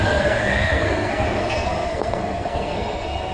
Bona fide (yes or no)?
no